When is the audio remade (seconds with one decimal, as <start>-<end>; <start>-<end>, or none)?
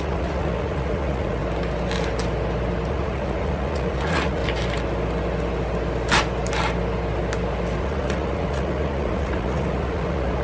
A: 0.0-1.4; 2.9-4.4; 7.8-10.4